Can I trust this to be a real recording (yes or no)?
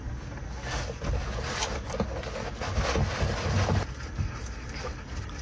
yes